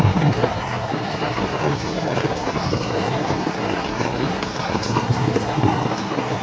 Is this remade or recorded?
remade